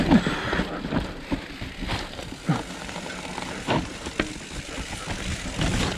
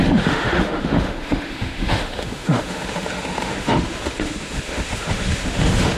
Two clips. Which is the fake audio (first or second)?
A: second